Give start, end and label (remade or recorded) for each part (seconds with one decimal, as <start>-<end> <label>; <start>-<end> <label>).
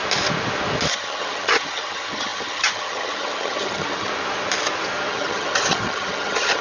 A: 0.0-0.9 recorded; 0.9-4.1 remade; 4.1-5.1 recorded; 5.1-6.6 remade